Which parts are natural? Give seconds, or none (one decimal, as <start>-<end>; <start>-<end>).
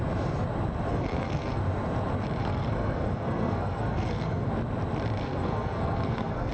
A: 0.0-0.9; 1.6-2.4; 4.5-5.2